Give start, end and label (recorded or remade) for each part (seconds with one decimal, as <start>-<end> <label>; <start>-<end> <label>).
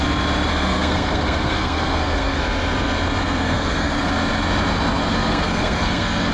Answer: 0.0-0.5 recorded; 0.5-2.4 remade; 2.4-3.2 recorded; 3.2-4.1 remade; 4.1-5.0 recorded; 5.0-6.3 remade